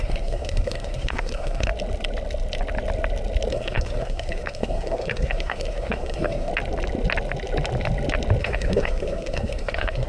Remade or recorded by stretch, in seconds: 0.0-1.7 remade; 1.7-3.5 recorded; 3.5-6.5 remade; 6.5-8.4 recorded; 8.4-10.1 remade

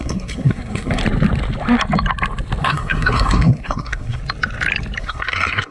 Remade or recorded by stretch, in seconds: 0.0-1.0 remade; 1.0-2.6 recorded; 2.6-4.2 remade; 4.2-5.0 recorded; 5.0-5.7 remade

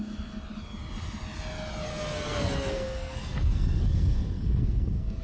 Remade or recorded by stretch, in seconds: 0.0-1.9 recorded; 1.9-5.2 remade

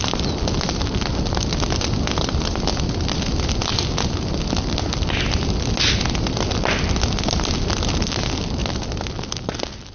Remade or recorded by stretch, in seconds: 0.0-9.9 recorded